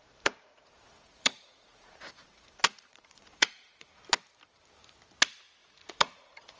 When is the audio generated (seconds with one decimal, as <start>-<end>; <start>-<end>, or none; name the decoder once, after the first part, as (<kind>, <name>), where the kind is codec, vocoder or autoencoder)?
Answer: 0.0-4.0 (vocoder, Vocos); 5.6-6.6